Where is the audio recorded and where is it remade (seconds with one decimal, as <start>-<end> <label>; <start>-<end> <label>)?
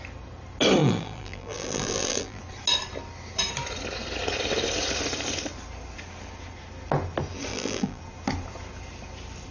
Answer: 0.0-0.8 recorded; 0.8-2.4 remade; 2.4-7.5 recorded; 7.5-8.0 remade; 8.0-9.5 recorded